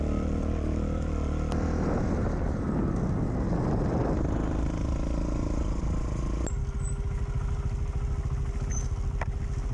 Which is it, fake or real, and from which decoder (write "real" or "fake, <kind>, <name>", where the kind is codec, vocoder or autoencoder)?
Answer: real